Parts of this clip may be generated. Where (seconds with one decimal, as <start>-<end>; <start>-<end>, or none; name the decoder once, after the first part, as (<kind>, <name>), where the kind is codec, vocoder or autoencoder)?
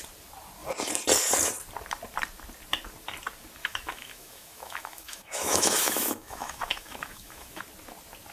3.6-7.6 (autoencoder, DAC-VAE)